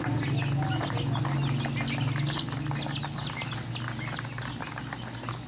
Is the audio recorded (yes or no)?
yes